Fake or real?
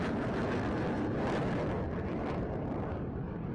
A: real